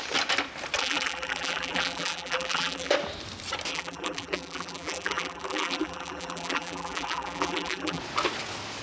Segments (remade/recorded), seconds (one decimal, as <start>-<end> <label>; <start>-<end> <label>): 0.0-0.8 recorded; 0.8-2.9 remade; 2.9-3.7 recorded; 3.7-8.0 remade; 8.0-8.8 recorded